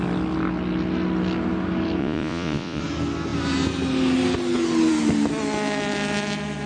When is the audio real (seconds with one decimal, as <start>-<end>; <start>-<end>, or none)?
0.0-2.0; 2.8-6.7